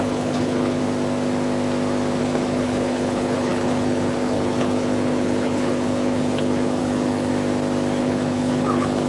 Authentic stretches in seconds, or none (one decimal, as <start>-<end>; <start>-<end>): 0.8-2.2; 7.3-8.0